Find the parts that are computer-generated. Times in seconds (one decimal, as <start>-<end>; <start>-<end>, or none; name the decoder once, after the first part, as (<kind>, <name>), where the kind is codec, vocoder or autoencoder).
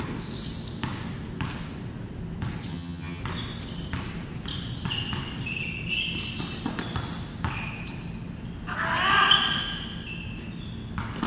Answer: 2.7-3.2 (vocoder, HiFi-GAN)